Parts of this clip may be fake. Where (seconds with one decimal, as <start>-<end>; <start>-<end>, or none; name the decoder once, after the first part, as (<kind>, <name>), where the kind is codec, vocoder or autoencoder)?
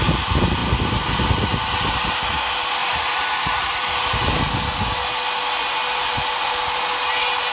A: 2.8-4.4 (vocoder, BigVGAN v2)